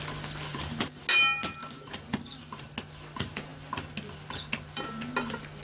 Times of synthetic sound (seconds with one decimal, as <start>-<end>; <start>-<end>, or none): 0.5-1.0; 1.6-2.6